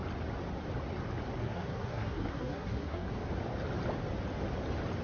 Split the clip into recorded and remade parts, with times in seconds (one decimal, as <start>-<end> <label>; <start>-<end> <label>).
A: 0.0-1.4 recorded; 1.4-3.1 remade; 3.1-5.0 recorded